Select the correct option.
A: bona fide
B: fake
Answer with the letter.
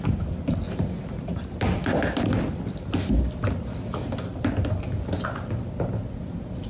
A